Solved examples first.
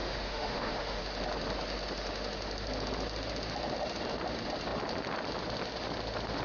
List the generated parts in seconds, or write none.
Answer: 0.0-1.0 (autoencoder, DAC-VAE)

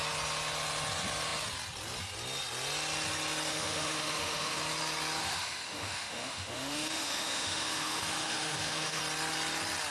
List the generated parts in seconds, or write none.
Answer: 3.5-4.6 (autoencoder, DAC-VAE); 5.2-9.0

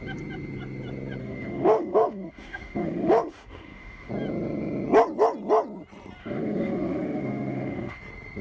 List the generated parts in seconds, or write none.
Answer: 1.2-4.1 (autoencoder, DAC-VAE); 6.2-8.0

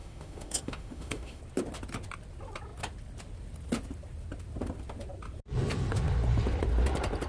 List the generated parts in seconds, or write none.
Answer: 0.0-1.4 (autoencoder, DAC-VAE)

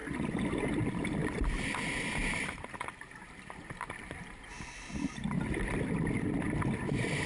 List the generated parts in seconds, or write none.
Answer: none